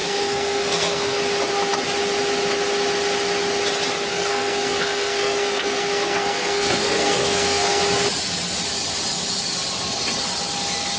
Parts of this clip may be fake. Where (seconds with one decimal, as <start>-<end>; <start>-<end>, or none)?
0.0-1.2; 4.1-7.8